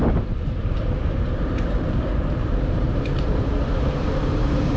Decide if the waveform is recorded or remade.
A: remade